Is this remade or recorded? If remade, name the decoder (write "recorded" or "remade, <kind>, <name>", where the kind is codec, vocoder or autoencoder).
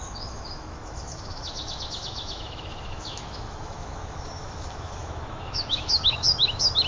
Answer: remade, autoencoder, DAC-VAE